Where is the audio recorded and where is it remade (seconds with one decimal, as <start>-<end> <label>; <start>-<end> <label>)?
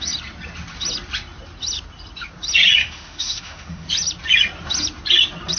0.0-2.8 recorded; 2.8-3.9 remade; 3.9-5.6 recorded